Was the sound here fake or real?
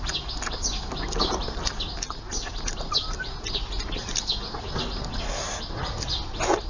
real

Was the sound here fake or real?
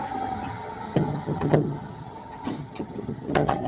fake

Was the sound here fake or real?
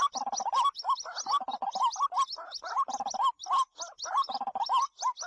real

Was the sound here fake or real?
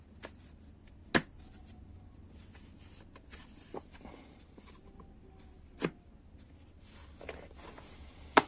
real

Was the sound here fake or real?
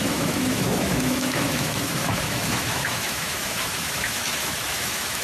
fake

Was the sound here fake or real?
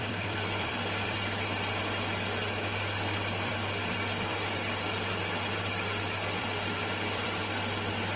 fake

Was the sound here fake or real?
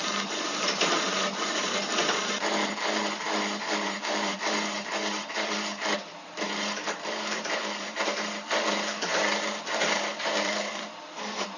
fake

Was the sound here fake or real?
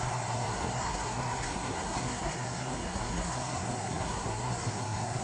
fake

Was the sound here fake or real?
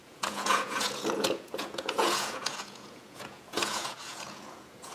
fake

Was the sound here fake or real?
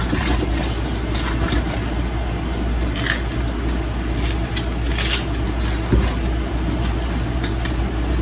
real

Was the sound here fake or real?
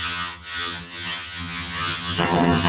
fake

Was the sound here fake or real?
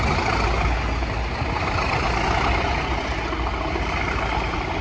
real